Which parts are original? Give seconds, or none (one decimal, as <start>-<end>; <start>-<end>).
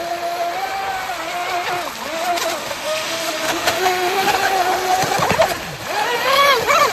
0.0-2.6; 4.3-6.9